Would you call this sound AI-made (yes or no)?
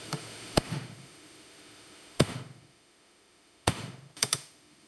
yes